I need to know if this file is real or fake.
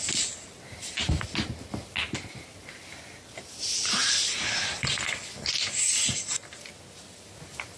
real